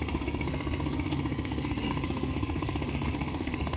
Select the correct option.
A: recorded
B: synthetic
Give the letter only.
B